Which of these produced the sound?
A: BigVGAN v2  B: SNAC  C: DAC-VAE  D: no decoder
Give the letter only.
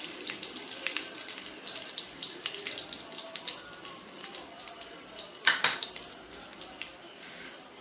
A